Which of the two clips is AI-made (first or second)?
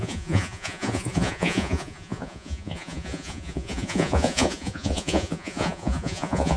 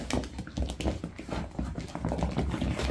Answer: first